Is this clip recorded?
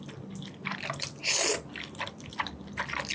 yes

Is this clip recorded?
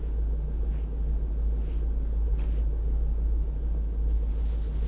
yes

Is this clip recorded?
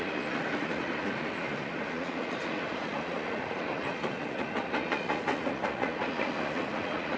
no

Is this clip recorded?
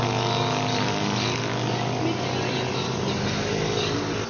yes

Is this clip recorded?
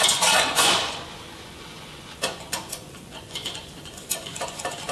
no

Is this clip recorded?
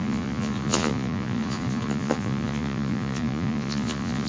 no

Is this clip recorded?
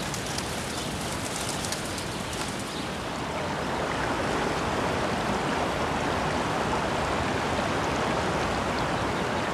yes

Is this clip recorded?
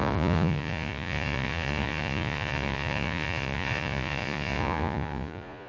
no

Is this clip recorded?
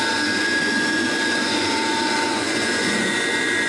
no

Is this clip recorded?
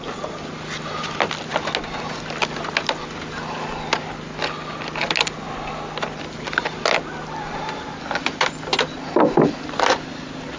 yes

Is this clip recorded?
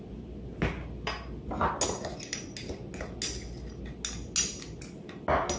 yes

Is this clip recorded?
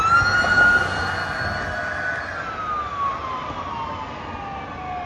yes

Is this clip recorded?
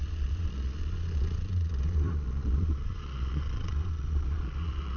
no